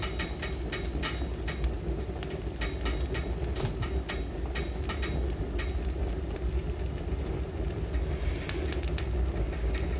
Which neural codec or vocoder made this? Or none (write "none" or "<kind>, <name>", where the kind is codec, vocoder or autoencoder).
none